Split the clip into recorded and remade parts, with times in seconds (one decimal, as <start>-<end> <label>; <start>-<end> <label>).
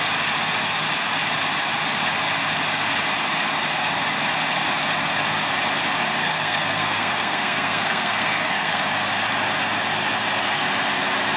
0.0-6.2 recorded; 6.2-8.8 remade; 8.8-11.4 recorded